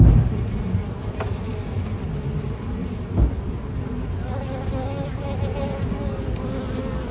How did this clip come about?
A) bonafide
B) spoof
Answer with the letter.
A